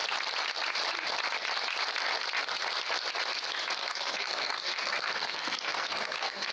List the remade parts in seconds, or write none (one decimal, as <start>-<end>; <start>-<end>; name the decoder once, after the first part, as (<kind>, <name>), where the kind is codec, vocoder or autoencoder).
3.8-6.5 (codec, SNAC)